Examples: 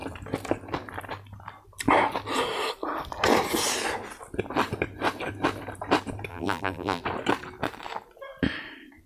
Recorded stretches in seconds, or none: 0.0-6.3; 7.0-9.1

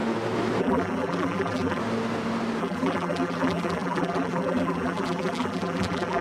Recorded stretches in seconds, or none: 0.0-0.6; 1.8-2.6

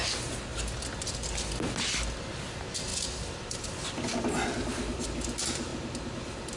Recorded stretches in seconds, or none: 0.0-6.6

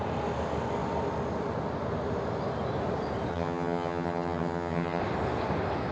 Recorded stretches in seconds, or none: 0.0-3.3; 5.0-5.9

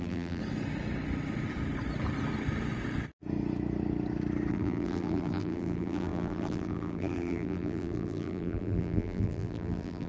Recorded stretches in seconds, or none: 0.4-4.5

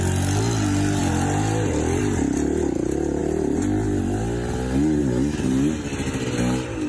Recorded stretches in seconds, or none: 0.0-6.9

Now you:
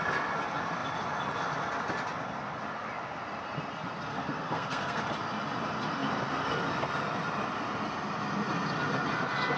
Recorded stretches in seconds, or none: 0.0-4.1; 5.0-9.6

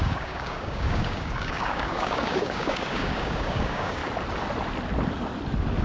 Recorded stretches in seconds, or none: 4.0-5.8